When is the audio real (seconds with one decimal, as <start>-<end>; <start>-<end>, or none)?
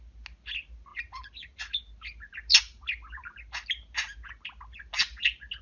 0.0-5.6